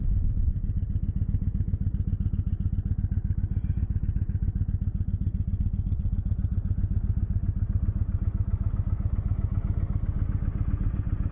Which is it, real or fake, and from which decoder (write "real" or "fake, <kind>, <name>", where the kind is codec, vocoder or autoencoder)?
real